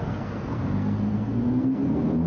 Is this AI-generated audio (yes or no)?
yes